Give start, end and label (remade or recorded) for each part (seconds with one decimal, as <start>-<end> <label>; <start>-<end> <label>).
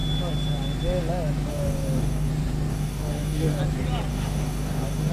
0.0-1.5 recorded; 1.5-2.3 remade; 2.3-2.7 recorded; 2.7-3.6 remade; 3.6-4.1 recorded; 4.1-5.1 remade